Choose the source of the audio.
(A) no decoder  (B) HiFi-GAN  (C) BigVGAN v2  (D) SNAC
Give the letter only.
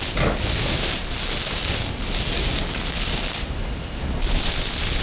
A